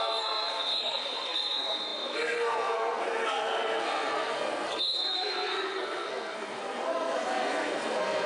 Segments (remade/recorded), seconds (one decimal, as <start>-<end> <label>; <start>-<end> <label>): 0.0-8.3 remade